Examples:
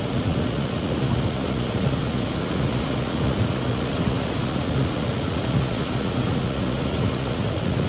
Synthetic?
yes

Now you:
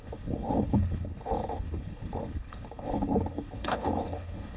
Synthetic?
yes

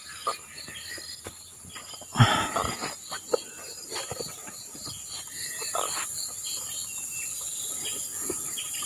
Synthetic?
no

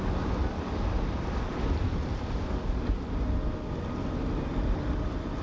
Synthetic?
no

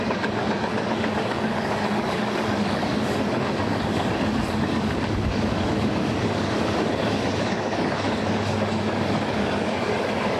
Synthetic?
yes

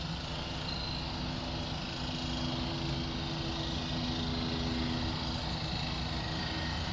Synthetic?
no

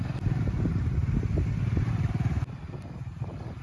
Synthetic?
no